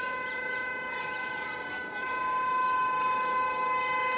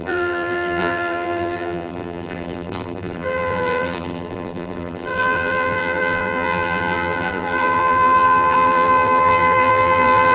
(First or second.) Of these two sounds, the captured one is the first